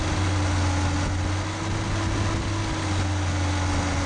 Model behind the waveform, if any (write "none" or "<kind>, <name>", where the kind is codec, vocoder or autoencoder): none